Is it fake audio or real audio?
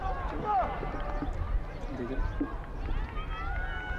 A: real